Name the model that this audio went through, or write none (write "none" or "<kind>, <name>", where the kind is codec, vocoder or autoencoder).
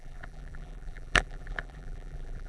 vocoder, BigVGAN v2